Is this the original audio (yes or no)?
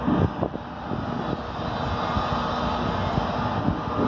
yes